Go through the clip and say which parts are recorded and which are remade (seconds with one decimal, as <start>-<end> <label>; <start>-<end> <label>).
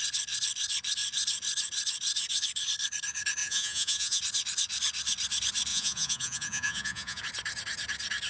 0.0-3.4 recorded; 3.4-4.2 remade; 4.2-5.7 recorded; 5.7-7.2 remade; 7.2-8.3 recorded